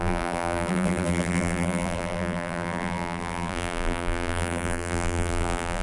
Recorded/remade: remade